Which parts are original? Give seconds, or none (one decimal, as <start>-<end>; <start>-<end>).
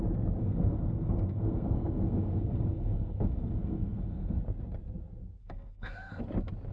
0.0-0.4; 4.4-5.4; 6.2-6.7